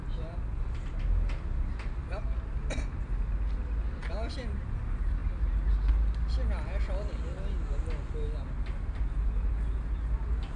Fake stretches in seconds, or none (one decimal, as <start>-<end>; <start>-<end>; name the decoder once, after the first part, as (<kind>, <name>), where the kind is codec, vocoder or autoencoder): none